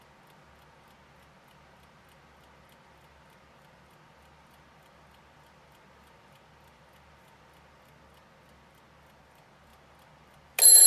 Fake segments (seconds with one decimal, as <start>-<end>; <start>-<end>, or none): none

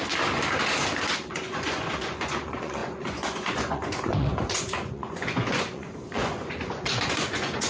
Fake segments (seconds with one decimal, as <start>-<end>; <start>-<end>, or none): 1.3-7.7